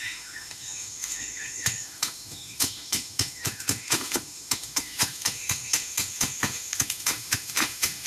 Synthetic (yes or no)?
yes